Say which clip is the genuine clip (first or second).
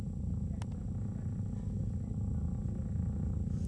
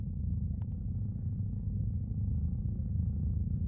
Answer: first